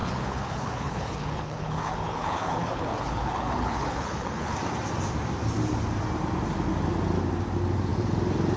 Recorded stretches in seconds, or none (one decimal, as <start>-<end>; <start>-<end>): 4.6-8.6